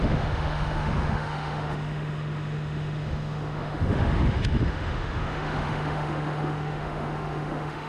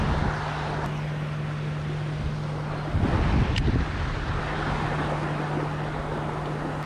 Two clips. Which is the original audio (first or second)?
second